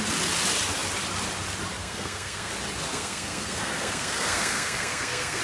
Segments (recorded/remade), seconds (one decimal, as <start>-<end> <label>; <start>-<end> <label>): 0.0-1.8 recorded; 1.8-2.5 remade; 2.5-2.9 recorded; 2.9-5.4 remade